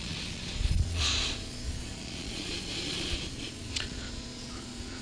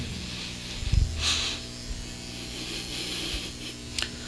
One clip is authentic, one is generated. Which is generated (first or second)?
first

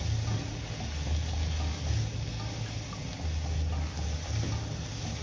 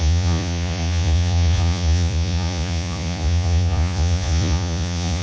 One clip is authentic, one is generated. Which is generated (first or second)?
second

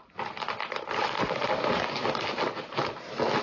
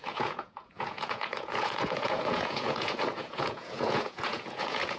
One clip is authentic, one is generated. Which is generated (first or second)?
second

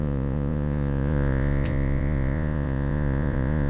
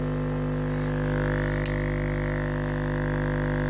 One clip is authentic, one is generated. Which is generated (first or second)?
first